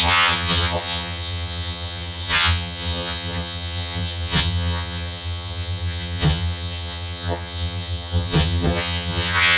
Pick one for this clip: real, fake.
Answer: fake